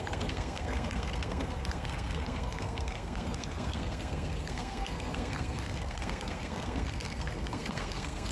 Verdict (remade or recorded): remade